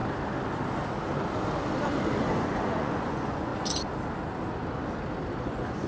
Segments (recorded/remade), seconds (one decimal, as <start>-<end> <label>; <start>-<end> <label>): 0.0-2.2 recorded; 2.2-3.5 remade; 3.5-5.4 recorded; 5.4-5.9 remade